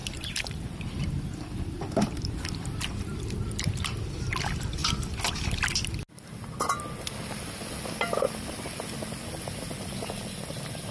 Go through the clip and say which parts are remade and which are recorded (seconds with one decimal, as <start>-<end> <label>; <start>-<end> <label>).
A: 0.0-3.2 remade; 3.2-10.9 recorded